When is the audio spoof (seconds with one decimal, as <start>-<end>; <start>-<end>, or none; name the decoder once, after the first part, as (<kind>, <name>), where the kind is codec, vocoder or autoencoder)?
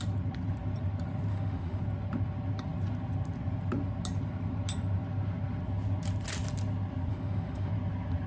1.3-1.8 (autoencoder, DAC-VAE); 7.1-7.7